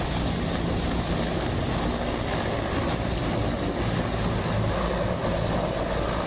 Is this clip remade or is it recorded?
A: recorded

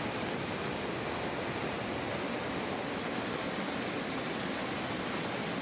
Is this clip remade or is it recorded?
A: recorded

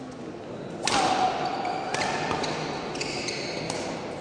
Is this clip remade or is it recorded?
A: recorded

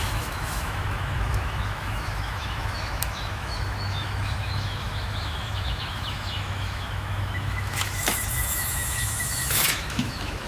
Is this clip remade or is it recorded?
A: remade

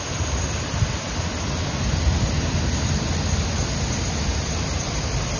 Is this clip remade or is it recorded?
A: recorded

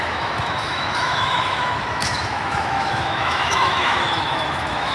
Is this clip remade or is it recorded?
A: remade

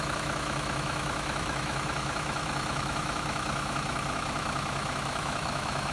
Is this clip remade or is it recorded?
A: remade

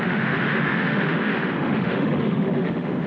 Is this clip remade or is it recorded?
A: remade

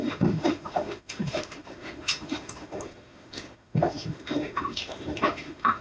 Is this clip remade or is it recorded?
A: remade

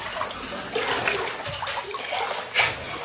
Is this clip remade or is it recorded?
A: recorded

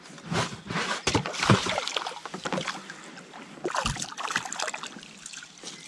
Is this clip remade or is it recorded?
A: recorded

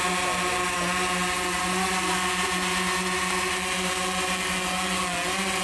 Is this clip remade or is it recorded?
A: recorded